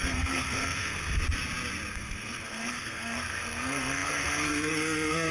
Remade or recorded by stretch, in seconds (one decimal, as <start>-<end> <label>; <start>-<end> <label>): 0.0-1.2 remade; 1.2-1.9 recorded; 1.9-5.3 remade